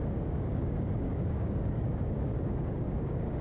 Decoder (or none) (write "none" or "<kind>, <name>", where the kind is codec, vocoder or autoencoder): codec, DAC